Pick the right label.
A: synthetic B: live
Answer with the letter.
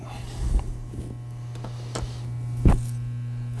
B